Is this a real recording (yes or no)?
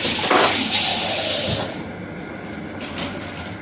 yes